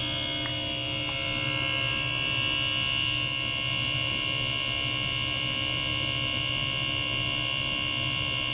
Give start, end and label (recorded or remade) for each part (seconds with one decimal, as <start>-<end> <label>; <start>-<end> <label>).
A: 0.0-8.5 recorded